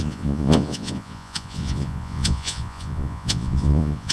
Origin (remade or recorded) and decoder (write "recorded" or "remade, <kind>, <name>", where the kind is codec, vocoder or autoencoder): remade, vocoder, Vocos